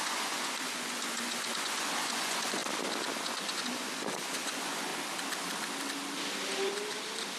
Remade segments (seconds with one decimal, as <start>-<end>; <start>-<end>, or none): 0.0-2.6; 3.2-4.9